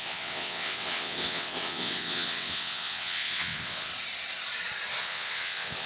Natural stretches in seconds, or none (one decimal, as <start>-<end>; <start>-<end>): 3.9-5.0